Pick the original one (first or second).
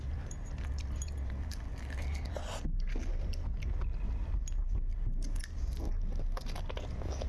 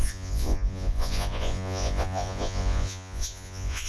first